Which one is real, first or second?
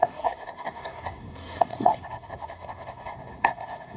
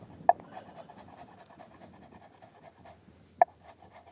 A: second